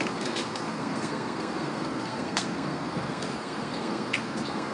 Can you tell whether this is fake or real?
fake